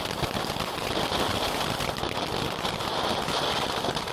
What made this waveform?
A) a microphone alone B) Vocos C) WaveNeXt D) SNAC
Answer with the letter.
A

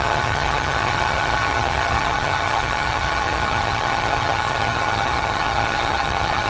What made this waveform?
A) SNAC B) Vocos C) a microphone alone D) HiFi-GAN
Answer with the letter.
D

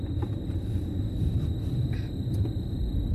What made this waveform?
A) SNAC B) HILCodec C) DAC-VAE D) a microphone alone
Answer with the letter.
D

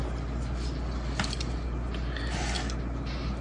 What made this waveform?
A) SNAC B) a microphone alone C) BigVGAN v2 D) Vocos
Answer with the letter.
B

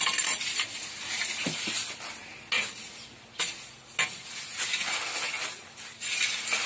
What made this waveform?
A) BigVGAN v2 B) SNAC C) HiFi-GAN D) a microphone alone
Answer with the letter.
D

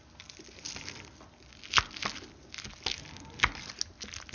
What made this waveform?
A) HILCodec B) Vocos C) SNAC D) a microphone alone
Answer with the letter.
D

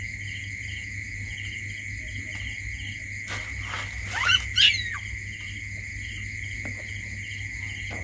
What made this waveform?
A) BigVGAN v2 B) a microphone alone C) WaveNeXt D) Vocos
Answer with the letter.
B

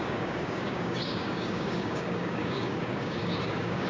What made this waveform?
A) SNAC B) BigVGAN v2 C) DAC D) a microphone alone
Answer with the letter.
C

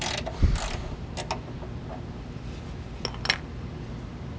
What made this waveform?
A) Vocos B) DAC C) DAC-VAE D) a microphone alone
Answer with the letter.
D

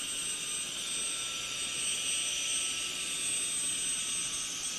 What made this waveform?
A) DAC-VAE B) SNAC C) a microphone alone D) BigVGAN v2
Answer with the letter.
C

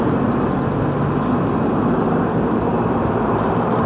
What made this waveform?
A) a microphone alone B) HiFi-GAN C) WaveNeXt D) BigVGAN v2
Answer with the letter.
A